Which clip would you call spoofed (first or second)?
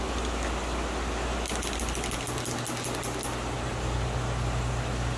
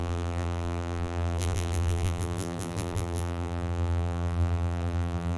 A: second